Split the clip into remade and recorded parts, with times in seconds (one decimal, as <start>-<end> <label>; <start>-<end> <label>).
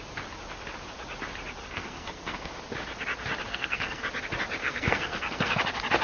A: 0.0-1.6 recorded; 1.6-2.5 remade; 2.5-3.5 recorded; 3.5-4.0 remade; 4.0-4.6 recorded; 4.6-5.6 remade; 5.6-6.0 recorded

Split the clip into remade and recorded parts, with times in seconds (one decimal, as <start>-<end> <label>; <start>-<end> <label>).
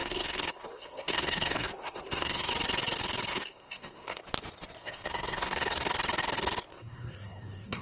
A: 0.0-2.5 remade; 2.5-3.3 recorded; 3.3-4.2 remade; 4.2-4.8 recorded; 4.8-5.9 remade; 5.9-6.7 recorded; 6.7-7.8 remade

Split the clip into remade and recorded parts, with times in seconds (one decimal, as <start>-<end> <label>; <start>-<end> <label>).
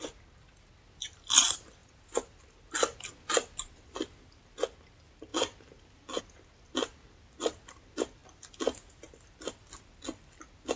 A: 0.0-10.8 recorded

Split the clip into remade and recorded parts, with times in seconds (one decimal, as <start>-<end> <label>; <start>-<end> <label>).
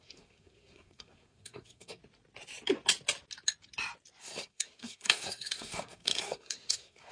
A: 0.0-2.0 remade; 2.0-4.2 recorded; 4.2-7.1 remade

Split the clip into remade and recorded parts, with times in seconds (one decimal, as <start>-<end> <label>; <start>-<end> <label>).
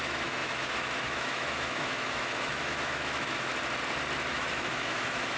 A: 0.0-3.5 remade; 3.5-4.3 recorded; 4.3-5.4 remade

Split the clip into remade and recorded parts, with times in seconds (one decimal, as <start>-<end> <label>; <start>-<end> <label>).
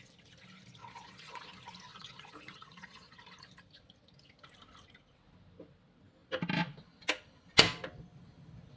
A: 0.0-0.8 recorded; 0.8-1.5 remade; 1.5-1.9 recorded; 1.9-3.2 remade; 3.2-8.8 recorded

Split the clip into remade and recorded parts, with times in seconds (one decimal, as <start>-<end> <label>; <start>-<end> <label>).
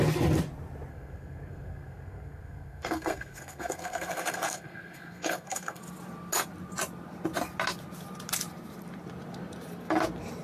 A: 0.0-0.9 recorded; 0.9-5.8 remade; 5.8-10.4 recorded